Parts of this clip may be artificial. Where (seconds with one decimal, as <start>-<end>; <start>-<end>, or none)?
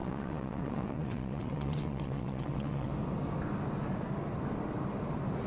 0.0-2.9